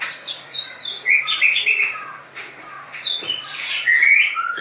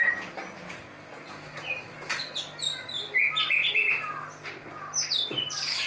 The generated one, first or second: first